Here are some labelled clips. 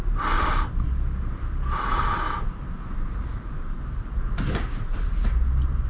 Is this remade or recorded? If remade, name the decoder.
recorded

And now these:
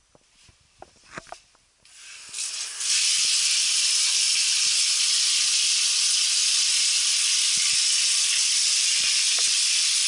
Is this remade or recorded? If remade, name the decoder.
recorded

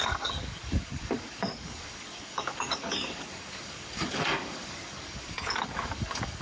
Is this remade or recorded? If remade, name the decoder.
remade, codec, DAC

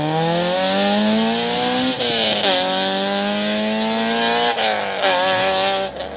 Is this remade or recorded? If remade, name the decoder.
recorded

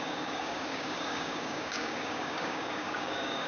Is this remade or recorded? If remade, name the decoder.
remade, codec, DAC